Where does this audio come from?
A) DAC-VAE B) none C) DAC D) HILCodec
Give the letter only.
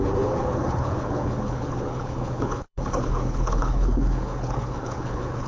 D